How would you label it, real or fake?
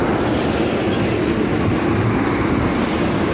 real